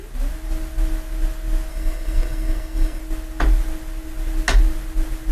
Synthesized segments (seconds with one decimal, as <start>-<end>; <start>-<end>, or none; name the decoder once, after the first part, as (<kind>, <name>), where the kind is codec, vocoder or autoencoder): 1.7-3.0 (codec, SNAC)